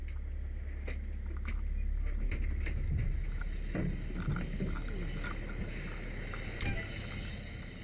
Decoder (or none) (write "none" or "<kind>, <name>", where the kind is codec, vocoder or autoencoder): none